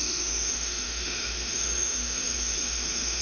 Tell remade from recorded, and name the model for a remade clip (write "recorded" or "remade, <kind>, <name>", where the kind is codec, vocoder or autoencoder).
remade, autoencoder, DAC-VAE